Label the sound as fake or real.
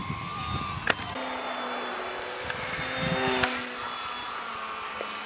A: real